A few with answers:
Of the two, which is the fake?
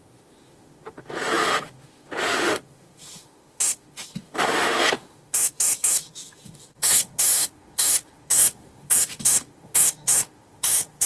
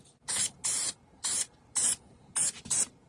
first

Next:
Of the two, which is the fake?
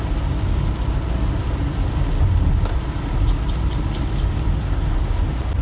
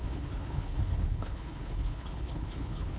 second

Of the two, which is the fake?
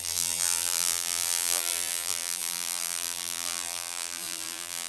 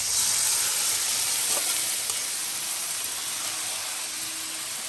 first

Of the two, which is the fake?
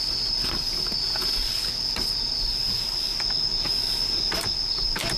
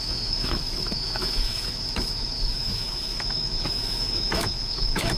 second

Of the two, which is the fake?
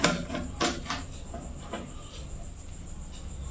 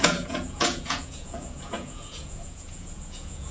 second